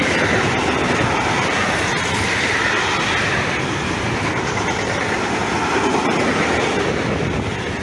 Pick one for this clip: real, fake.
real